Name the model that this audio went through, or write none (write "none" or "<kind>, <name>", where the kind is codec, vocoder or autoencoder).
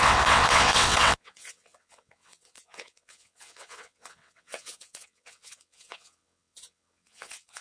vocoder, WaveNeXt